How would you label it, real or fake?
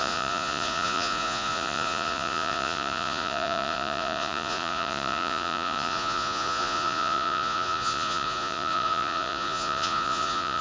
fake